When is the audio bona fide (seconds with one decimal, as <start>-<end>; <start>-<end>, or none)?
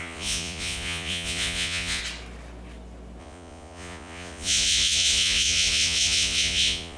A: 2.0-3.2